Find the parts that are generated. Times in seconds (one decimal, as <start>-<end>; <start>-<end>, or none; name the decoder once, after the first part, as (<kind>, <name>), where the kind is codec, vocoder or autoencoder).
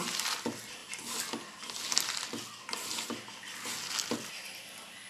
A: none